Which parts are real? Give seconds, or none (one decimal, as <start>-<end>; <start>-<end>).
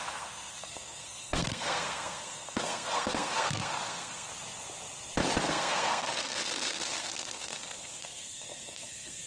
4.3-5.5